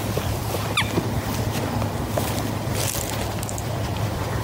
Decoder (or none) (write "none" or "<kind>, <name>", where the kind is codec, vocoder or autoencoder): none